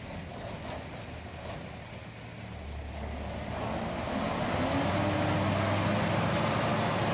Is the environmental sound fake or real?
real